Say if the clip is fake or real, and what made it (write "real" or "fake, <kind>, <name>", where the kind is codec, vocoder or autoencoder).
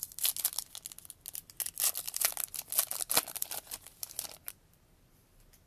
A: real